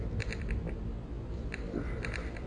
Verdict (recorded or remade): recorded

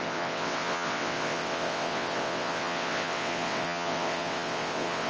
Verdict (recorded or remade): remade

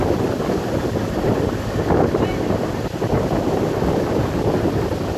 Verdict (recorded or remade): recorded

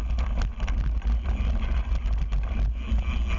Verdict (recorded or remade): recorded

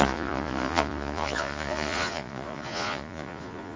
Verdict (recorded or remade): remade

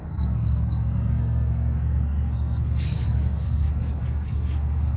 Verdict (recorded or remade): remade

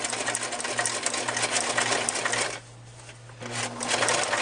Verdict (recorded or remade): recorded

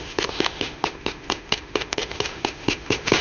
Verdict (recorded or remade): remade